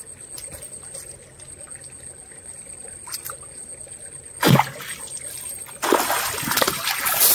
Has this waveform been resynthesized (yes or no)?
no